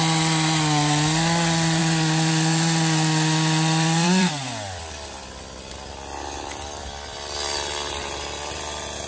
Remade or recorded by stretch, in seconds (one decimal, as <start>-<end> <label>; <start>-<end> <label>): 0.0-1.8 recorded; 1.8-5.2 remade; 5.2-9.1 recorded